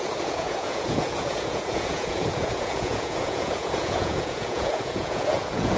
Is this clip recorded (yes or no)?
no